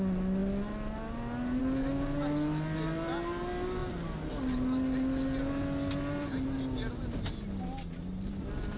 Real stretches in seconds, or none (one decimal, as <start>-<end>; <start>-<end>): 0.0-8.8